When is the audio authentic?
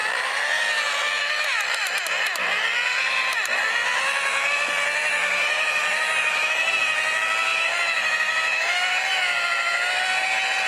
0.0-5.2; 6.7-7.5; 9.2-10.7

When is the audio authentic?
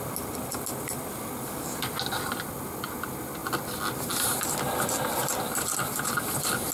0.0-6.7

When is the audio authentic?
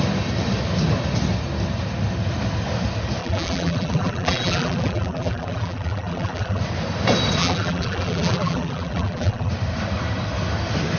0.0-3.2; 6.6-7.4; 9.5-11.0